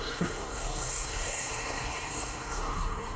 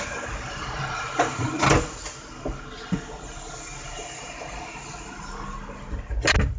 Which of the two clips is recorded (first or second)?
second